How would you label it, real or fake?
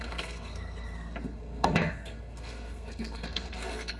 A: fake